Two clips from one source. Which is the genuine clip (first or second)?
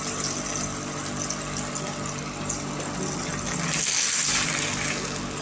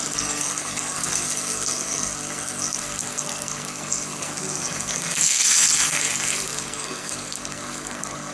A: first